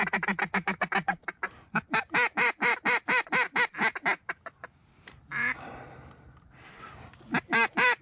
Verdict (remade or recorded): recorded